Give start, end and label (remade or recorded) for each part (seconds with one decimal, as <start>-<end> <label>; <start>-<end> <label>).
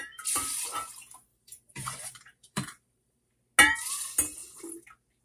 0.0-1.3 recorded; 1.3-3.3 remade; 3.3-5.2 recorded